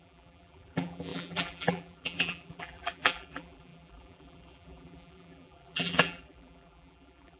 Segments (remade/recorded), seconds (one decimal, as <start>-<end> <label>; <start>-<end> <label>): 0.0-7.4 remade